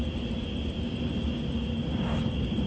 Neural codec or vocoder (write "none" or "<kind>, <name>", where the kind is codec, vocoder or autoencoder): none